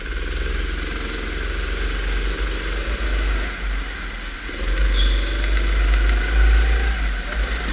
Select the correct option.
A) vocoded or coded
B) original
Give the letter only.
B